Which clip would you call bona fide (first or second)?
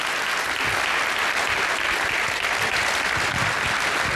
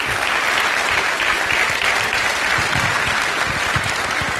first